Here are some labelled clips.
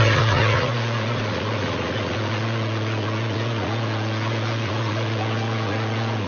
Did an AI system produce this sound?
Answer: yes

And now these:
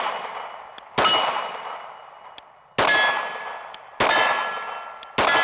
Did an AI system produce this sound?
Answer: no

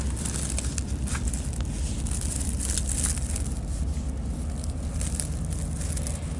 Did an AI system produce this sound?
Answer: no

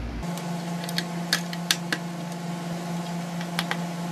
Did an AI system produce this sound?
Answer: no